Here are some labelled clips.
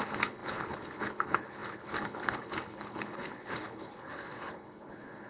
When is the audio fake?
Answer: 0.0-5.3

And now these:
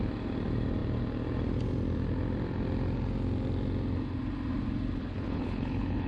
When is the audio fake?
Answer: 5.0-6.1